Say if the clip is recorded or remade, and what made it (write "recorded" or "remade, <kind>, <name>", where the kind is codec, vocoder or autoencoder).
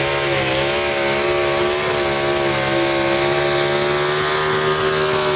recorded